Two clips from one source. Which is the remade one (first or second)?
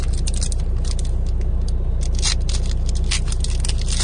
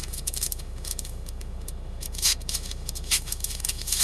second